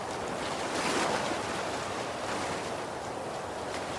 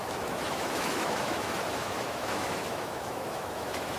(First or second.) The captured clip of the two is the first